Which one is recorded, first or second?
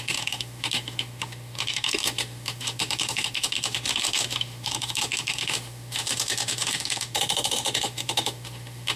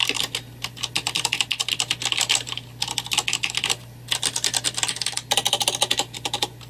second